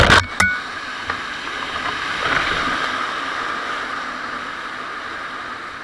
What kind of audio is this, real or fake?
real